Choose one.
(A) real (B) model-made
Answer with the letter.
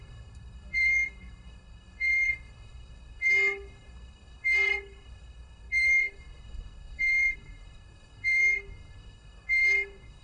B